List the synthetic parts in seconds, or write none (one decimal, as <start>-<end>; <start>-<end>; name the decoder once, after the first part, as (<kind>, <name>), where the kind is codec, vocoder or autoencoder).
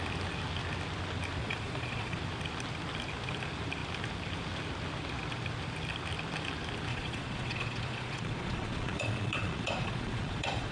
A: 1.4-2.2 (vocoder, Vocos); 6.9-10.7